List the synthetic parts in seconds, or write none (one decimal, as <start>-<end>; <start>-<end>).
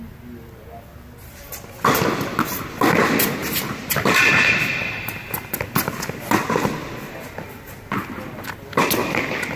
3.4-5.1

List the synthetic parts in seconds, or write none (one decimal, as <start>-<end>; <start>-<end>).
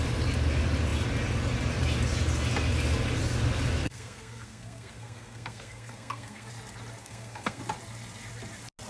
3.8-6.5; 7.0-7.6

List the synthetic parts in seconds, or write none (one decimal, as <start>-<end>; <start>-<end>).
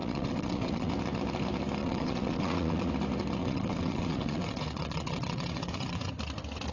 0.0-0.9; 1.8-2.9; 3.4-6.1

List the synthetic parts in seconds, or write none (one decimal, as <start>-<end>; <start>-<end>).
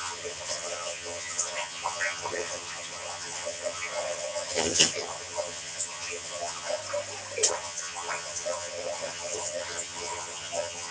0.0-6.8; 7.5-10.9